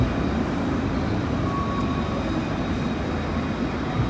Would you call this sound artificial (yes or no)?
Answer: no